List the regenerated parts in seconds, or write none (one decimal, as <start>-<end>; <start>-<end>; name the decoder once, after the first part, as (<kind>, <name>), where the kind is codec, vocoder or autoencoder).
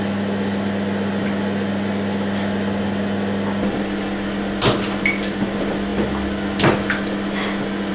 none